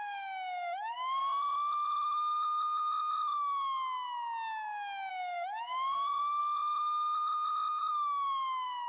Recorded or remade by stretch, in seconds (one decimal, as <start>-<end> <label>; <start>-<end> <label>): 0.0-1.2 remade; 1.2-5.1 recorded; 5.1-6.4 remade; 6.4-7.8 recorded; 7.8-8.9 remade